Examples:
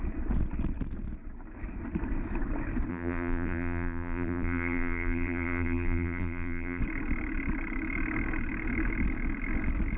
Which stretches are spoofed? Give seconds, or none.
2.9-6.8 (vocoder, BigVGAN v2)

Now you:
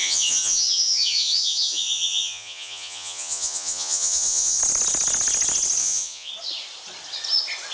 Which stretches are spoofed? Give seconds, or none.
0.0-4.6 (vocoder, Vocos); 5.8-6.3

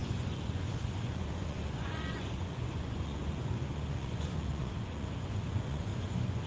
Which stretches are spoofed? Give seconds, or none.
0.0-6.5 (vocoder, Vocos)

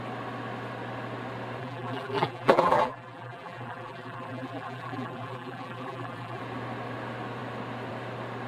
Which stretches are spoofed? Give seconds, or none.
1.6-6.4 (vocoder, BigVGAN v2)